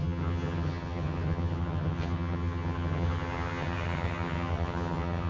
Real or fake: fake